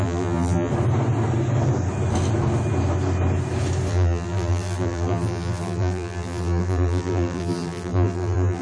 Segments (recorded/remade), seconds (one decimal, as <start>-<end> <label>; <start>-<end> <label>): 0.0-0.7 remade; 0.7-3.9 recorded; 3.9-8.6 remade